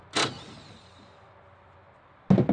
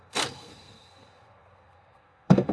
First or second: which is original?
first